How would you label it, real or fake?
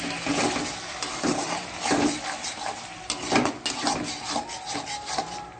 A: real